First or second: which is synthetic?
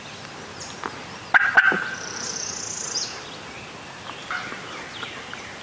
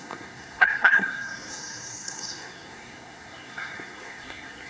second